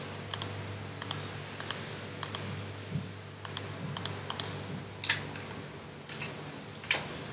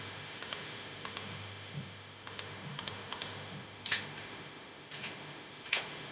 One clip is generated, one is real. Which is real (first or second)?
first